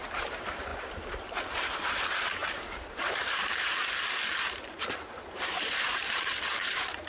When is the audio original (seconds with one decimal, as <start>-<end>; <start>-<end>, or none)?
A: none